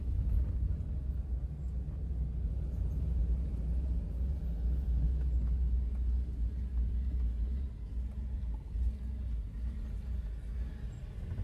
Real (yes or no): yes